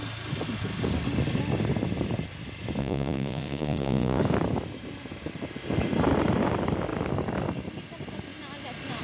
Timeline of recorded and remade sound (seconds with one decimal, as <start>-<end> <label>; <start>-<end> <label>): 0.0-2.8 recorded; 2.8-4.2 remade; 4.2-9.0 recorded